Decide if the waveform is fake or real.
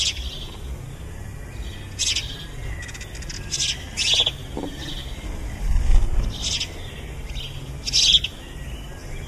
real